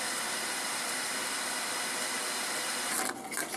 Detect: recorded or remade recorded